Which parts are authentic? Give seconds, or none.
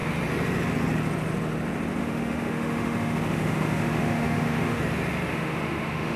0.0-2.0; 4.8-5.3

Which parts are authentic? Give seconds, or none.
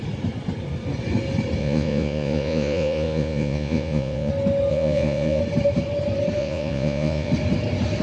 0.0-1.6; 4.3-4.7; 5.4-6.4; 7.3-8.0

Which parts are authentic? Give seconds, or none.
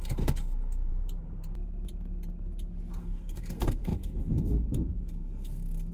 0.9-3.0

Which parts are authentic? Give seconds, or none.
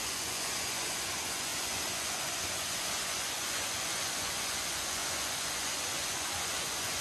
none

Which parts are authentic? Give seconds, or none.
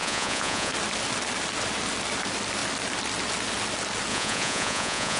0.7-4.1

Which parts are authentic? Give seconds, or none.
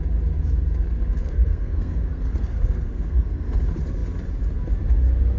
0.0-1.2; 3.6-5.4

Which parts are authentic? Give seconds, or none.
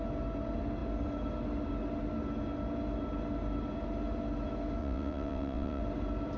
0.0-4.8; 5.8-6.4